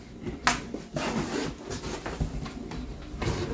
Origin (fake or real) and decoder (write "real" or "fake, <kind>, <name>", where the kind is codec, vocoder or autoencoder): real